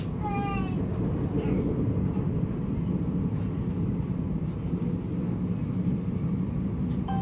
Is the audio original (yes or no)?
yes